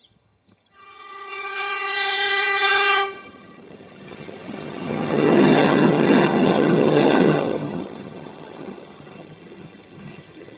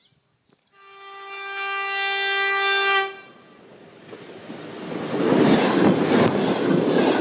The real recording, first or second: second